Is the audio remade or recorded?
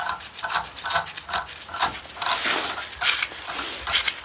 recorded